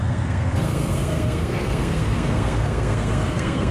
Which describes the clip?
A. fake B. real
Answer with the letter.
A